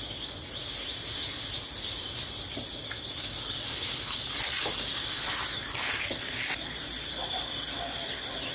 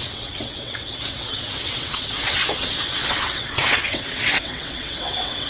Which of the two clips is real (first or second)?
first